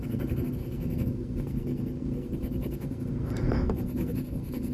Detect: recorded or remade remade